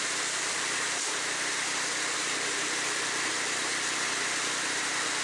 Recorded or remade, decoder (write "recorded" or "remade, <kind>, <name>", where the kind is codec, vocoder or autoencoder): remade, vocoder, BigVGAN v2